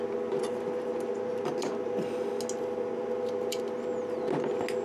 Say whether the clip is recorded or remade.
recorded